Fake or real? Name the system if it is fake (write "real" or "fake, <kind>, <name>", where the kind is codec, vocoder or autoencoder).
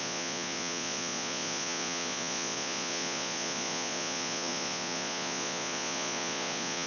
fake, vocoder, Vocos